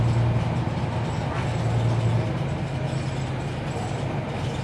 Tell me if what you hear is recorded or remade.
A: recorded